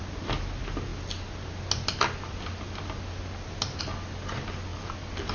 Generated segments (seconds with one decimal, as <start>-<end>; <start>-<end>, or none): none